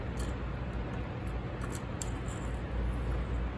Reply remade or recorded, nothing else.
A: recorded